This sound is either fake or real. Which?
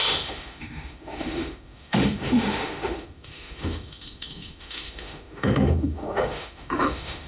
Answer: fake